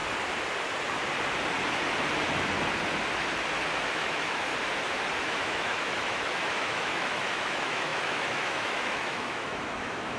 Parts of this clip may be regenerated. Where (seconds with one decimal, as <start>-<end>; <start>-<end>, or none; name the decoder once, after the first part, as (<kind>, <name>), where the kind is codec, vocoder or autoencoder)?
3.9-4.5 (autoencoder, DAC-VAE); 5.2-10.2